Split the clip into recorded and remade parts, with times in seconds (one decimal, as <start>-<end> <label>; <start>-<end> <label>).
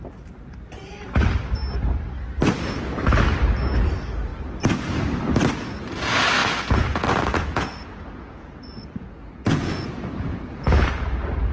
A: 0.0-6.4 recorded; 6.4-9.9 remade; 9.9-10.3 recorded; 10.3-10.9 remade; 10.9-11.5 recorded